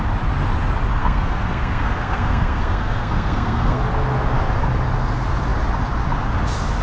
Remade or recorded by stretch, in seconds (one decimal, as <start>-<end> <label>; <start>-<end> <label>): 0.0-1.0 recorded; 1.0-3.8 remade; 3.8-6.8 recorded